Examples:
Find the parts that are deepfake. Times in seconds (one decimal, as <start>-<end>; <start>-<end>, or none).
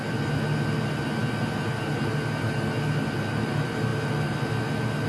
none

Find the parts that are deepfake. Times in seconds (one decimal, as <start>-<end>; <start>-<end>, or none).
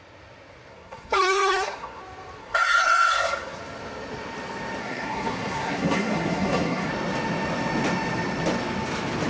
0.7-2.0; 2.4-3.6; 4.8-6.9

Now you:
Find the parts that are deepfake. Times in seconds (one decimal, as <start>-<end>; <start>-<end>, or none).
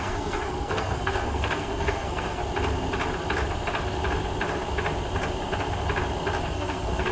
0.0-2.4; 6.4-7.1